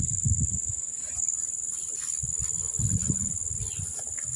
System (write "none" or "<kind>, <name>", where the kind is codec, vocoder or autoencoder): none